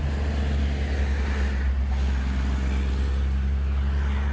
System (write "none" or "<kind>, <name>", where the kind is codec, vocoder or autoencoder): none